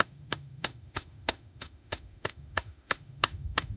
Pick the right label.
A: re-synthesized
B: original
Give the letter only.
A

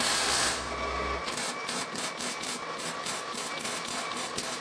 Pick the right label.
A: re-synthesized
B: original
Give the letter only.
B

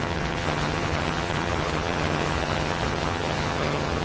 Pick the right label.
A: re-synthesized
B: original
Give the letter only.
A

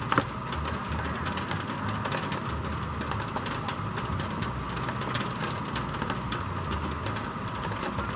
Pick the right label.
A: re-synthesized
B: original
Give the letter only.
B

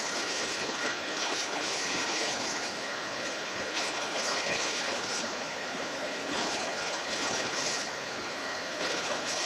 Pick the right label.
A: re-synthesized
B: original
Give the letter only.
A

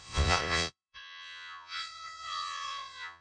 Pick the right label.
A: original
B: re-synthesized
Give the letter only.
B